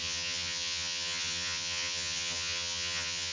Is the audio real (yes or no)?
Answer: no